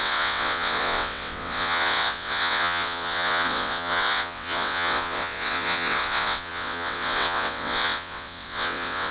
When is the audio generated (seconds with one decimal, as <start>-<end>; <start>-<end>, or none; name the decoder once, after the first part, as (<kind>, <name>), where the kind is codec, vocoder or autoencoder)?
0.0-9.1 (vocoder, WaveNeXt)